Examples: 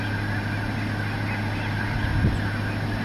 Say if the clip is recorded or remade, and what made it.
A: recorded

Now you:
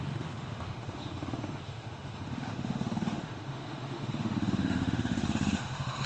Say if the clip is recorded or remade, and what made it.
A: remade, autoencoder, DAC-VAE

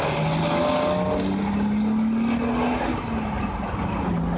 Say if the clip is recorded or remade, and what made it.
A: recorded